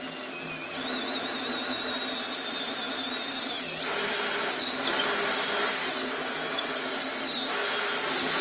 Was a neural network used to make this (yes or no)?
no